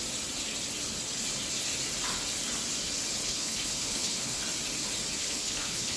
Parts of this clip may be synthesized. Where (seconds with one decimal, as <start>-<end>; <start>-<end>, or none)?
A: 3.2-4.4; 5.2-6.0